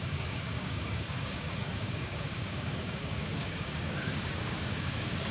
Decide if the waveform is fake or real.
fake